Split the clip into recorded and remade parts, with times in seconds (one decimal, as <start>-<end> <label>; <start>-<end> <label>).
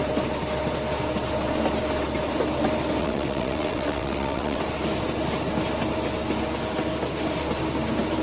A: 0.0-3.0 recorded; 3.0-4.6 remade; 4.6-8.2 recorded